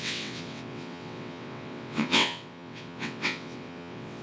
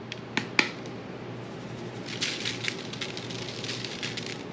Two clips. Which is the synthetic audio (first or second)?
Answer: first